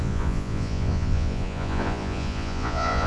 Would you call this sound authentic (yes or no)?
no